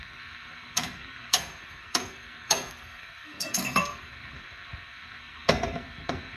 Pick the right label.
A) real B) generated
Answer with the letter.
B